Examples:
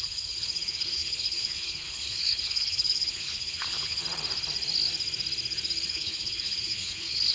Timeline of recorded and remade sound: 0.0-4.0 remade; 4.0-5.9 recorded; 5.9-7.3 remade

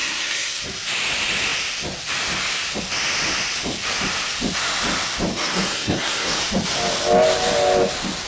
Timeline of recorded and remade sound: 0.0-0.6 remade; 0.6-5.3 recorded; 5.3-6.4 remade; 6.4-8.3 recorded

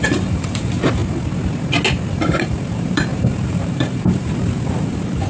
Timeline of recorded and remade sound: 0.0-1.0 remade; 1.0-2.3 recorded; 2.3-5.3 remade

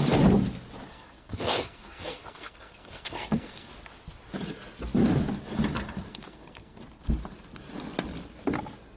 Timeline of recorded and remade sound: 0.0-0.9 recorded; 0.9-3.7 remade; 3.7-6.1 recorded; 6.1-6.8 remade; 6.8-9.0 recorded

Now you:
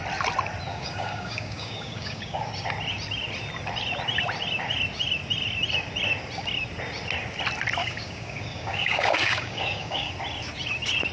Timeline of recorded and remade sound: 0.0-0.7 recorded; 0.7-2.5 remade; 2.5-7.8 recorded; 7.8-10.1 remade; 10.1-11.1 recorded

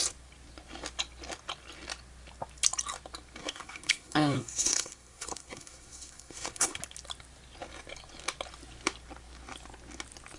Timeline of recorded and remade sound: 0.0-3.4 recorded; 3.4-6.8 remade; 6.8-10.4 recorded